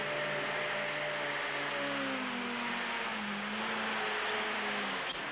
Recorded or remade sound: recorded